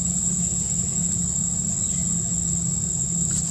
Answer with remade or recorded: recorded